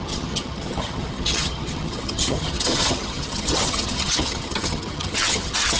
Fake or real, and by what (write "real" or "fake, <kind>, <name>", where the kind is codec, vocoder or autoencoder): fake, vocoder, HiFi-GAN